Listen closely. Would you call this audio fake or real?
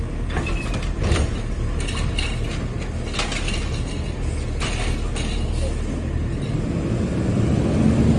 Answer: real